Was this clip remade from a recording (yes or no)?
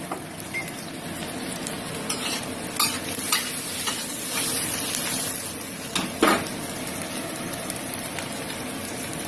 no